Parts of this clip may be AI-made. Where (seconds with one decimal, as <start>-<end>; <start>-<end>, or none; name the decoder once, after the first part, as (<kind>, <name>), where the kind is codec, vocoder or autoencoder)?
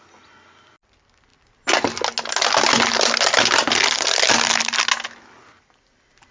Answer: none